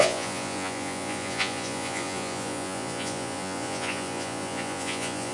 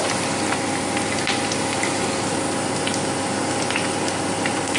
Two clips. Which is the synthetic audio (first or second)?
first